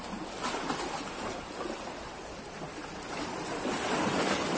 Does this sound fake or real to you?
real